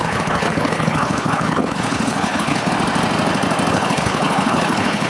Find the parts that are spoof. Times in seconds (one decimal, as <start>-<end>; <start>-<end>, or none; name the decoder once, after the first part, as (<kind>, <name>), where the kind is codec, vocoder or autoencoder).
0.0-2.7 (codec, HILCodec); 3.7-5.1